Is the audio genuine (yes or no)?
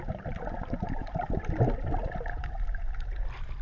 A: yes